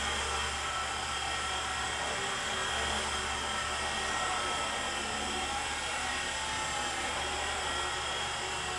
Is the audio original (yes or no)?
yes